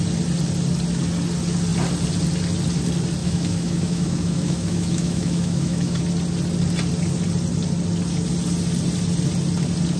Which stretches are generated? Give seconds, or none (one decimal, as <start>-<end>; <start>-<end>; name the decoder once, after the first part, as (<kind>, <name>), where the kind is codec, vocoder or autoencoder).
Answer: 3.2-6.0 (autoencoder, DAC-VAE)